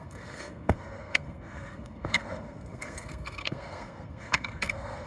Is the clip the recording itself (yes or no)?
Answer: no